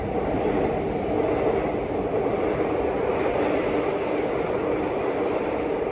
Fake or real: real